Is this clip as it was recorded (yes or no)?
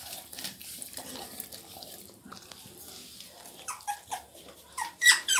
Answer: no